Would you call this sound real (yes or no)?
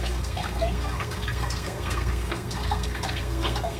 no